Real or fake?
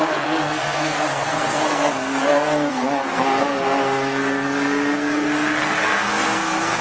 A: fake